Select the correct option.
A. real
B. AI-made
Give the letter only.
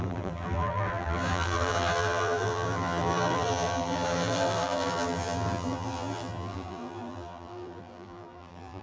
B